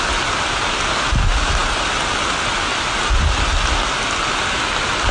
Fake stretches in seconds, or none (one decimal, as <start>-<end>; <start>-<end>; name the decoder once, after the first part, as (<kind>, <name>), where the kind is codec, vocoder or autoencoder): none